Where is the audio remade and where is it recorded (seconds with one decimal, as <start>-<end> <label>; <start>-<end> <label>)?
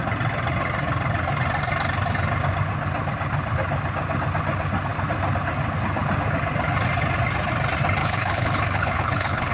0.0-8.0 recorded; 8.0-9.5 remade